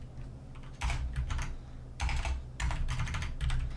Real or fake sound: real